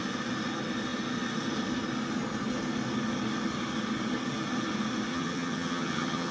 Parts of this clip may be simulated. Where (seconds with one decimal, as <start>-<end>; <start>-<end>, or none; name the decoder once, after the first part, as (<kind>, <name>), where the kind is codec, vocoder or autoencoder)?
5.1-6.3 (vocoder, HiFi-GAN)